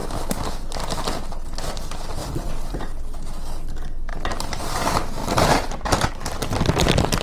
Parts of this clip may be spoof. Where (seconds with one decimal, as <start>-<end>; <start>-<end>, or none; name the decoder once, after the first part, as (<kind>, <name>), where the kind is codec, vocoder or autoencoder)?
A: 2.2-2.8 (vocoder, BigVGAN v2); 5.2-6.1